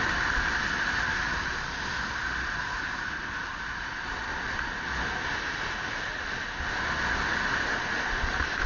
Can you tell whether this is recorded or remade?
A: recorded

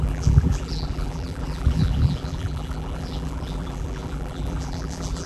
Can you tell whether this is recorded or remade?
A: remade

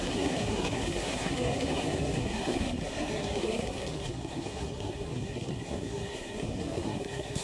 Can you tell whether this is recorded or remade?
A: remade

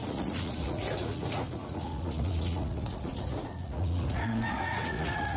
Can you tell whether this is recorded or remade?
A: remade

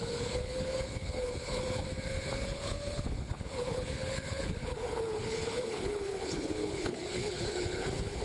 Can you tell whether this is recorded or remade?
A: remade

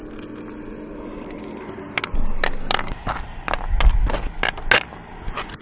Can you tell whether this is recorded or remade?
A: recorded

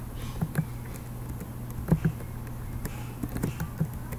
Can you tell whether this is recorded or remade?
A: recorded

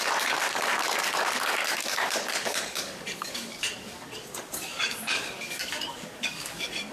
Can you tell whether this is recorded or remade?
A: remade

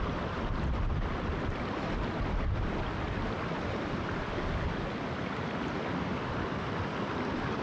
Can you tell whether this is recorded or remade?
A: recorded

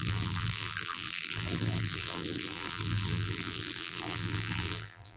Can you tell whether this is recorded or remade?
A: remade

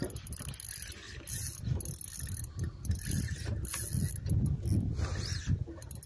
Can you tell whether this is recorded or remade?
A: recorded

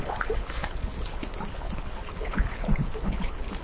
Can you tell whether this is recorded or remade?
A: remade